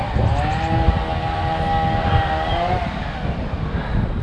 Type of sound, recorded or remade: recorded